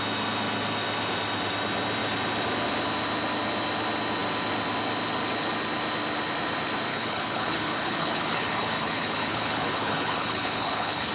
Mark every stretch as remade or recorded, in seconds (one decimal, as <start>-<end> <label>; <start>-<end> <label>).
0.0-6.9 recorded; 6.9-11.1 remade